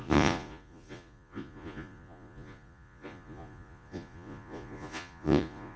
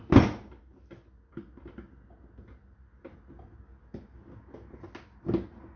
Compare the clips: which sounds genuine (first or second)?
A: second